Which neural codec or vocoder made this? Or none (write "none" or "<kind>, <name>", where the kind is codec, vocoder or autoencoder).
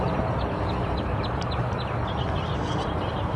none